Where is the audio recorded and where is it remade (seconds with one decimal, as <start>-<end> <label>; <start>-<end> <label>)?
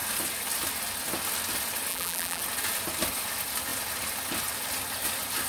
0.0-1.9 recorded; 1.9-2.4 remade; 2.4-5.5 recorded